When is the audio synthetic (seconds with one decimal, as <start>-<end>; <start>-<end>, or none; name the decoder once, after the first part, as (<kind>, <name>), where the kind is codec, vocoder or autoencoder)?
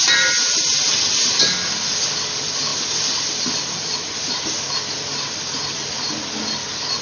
2.7-4.3 (vocoder, BigVGAN v2)